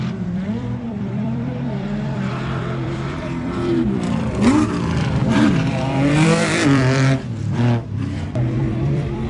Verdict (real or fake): fake